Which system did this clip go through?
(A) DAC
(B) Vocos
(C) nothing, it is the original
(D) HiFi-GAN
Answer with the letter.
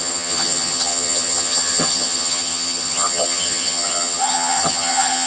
D